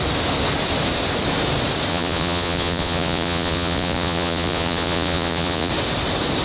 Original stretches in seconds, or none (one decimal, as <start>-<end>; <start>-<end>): 0.0-1.9; 5.7-6.4

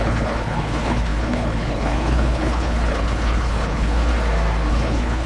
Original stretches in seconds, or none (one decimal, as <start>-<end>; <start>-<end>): 4.1-4.7

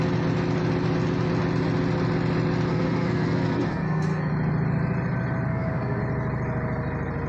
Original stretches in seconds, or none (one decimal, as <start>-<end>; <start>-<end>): 0.0-2.7; 4.3-5.5; 6.0-7.3